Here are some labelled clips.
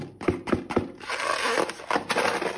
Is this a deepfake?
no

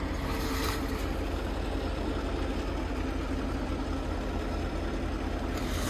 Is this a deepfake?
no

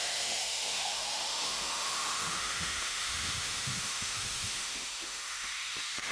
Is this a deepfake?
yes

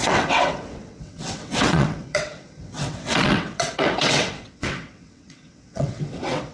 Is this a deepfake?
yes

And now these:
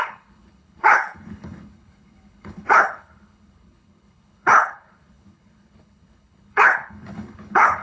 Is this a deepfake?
yes